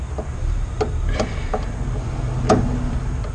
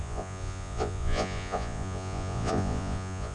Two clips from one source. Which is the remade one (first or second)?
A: second